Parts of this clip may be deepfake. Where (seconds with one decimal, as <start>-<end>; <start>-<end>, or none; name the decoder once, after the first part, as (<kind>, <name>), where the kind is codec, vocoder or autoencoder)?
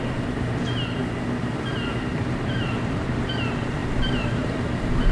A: 1.9-3.3 (vocoder, BigVGAN v2); 3.8-5.1